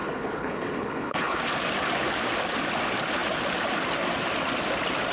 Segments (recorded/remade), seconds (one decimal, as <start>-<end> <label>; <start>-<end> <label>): 0.0-1.4 remade; 1.4-5.1 recorded